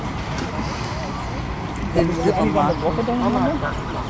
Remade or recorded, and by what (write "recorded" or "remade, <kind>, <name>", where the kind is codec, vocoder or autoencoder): recorded